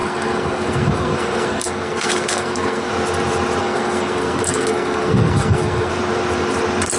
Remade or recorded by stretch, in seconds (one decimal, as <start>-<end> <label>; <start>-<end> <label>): 0.0-2.9 remade; 2.9-3.6 recorded; 3.6-5.9 remade; 5.9-7.0 recorded